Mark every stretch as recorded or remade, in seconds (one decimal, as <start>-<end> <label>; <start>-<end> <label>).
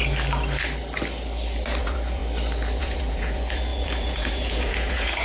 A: 0.0-1.8 recorded; 1.8-2.2 remade; 2.2-2.8 recorded; 2.8-5.2 remade